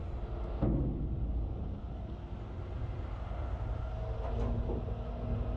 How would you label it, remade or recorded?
recorded